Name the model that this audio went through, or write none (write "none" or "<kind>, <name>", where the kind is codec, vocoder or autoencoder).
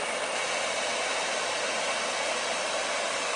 none